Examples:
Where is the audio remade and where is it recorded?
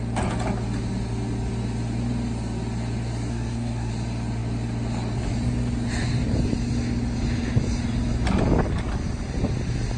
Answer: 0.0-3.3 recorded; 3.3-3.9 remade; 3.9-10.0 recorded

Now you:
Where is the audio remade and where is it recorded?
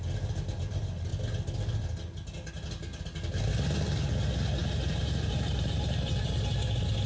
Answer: 0.0-4.6 recorded; 4.6-7.1 remade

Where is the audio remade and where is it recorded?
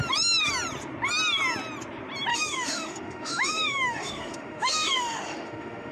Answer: 0.0-2.3 recorded; 2.3-5.9 remade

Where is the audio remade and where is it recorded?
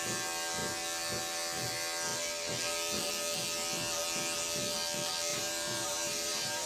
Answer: 0.0-5.3 recorded; 5.3-6.7 remade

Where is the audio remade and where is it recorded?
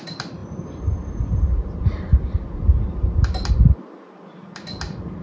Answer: 0.0-5.2 recorded